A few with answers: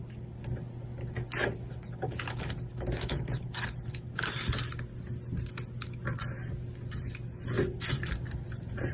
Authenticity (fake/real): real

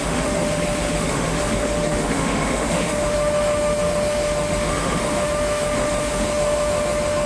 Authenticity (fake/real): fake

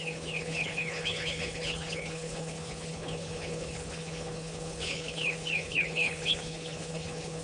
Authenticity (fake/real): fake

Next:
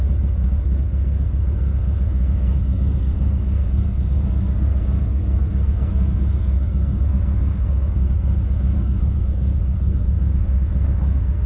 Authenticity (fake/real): fake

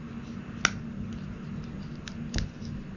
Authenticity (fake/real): real